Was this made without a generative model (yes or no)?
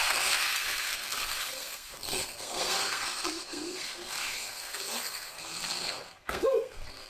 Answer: no